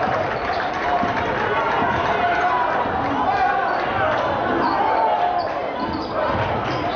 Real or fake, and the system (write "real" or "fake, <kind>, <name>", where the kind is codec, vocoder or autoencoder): real